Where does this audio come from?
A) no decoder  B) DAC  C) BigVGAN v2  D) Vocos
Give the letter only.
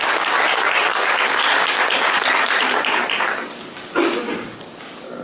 B